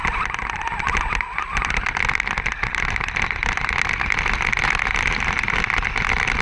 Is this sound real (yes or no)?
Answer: yes